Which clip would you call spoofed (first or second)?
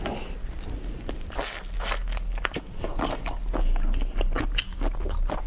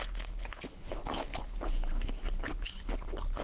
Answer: second